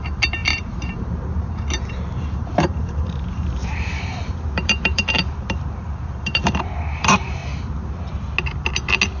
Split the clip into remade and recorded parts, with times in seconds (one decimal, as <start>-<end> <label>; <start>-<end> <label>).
0.0-7.4 remade; 7.4-9.2 recorded